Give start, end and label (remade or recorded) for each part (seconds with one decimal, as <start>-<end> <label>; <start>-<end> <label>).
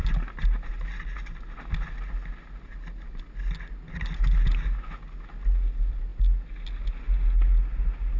0.0-8.2 recorded